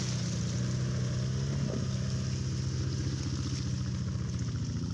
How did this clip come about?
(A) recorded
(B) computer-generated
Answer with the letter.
A